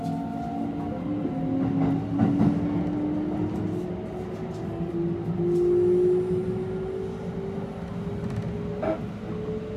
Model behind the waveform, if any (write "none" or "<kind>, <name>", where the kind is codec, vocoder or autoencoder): none